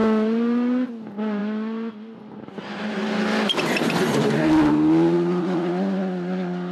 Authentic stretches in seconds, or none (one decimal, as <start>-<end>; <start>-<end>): 0.0-6.7